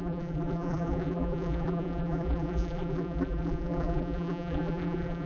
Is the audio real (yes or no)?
no